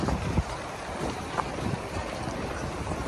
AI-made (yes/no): yes